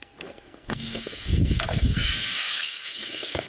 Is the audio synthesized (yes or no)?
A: yes